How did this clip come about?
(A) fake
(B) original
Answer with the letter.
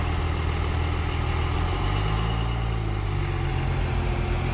B